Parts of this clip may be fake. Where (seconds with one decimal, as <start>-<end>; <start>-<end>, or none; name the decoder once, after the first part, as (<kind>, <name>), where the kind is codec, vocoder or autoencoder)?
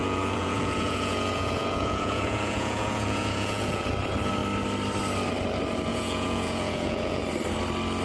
0.0-3.8 (vocoder, Vocos); 5.9-7.2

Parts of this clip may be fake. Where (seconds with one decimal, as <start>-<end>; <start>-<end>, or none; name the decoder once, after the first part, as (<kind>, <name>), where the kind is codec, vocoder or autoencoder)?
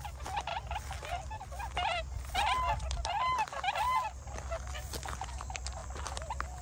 5.8-6.6 (vocoder, BigVGAN v2)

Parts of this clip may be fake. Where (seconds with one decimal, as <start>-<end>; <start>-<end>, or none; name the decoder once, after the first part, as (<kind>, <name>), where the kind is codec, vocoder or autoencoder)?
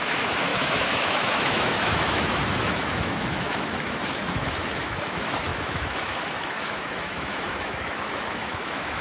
0.0-9.0 (autoencoder, DAC-VAE)